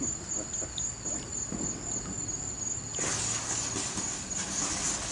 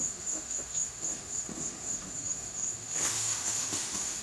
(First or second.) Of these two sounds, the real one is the first